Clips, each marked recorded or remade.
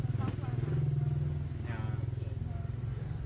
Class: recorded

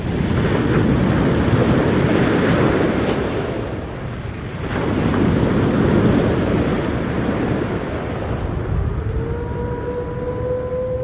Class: recorded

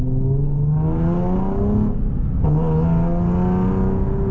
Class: recorded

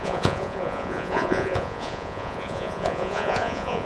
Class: remade